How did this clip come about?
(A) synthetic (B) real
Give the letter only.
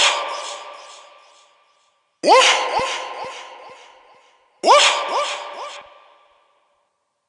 B